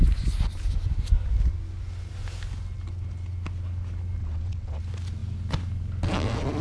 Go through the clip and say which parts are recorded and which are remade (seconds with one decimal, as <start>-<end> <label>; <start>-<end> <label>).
0.0-4.2 recorded; 4.2-4.8 remade; 4.8-6.6 recorded